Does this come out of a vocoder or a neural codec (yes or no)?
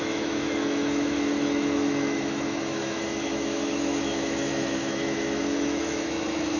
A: yes